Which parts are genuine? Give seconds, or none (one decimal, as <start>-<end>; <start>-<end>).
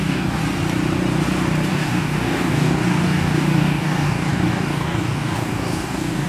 0.4-1.7